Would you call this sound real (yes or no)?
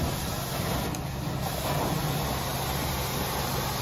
yes